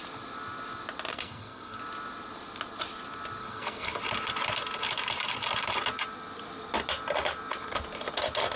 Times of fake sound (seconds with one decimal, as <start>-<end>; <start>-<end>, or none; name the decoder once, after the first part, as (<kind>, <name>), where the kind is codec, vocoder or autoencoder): 1.1-1.8 (codec, SNAC); 3.4-4.0